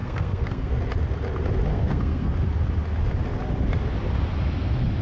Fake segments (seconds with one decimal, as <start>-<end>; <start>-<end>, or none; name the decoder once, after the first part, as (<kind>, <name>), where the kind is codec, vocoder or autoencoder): 0.0-0.7 (codec, SNAC); 1.7-2.3

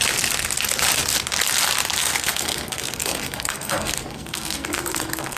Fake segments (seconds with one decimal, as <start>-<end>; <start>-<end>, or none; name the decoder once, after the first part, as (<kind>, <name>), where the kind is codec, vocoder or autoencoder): 2.0-5.4 (codec, SNAC)

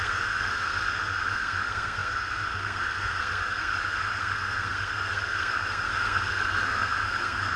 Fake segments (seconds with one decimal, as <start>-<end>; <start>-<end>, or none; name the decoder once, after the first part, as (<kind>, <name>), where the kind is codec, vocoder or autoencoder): 0.0-7.6 (codec, SNAC)

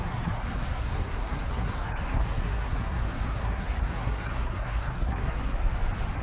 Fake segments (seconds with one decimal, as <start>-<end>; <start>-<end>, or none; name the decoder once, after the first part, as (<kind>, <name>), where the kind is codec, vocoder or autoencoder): 0.0-5.7 (codec, SNAC)

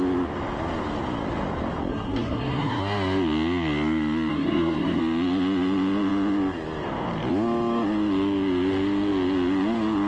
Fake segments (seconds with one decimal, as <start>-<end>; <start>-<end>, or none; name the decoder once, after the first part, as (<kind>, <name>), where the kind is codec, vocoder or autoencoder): 1.9-2.8 (codec, SNAC); 4.3-5.0

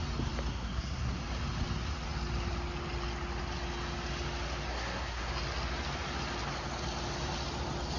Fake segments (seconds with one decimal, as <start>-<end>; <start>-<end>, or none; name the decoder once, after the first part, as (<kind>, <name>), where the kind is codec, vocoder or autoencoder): 0.5-1.2 (codec, SNAC); 4.7-5.3

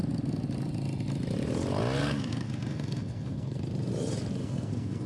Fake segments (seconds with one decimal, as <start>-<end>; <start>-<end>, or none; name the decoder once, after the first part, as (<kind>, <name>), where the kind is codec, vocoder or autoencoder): 2.0-3.6 (codec, SNAC); 4.4-5.1